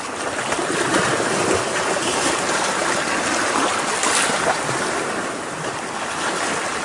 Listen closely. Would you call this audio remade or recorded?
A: recorded